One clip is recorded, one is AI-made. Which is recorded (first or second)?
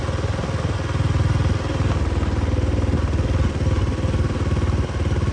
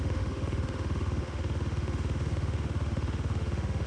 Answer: first